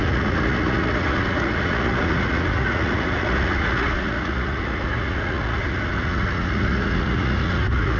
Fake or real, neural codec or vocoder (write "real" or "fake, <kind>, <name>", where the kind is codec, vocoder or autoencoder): fake, vocoder, Vocos